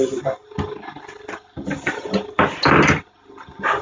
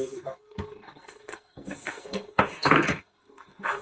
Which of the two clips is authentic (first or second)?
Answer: first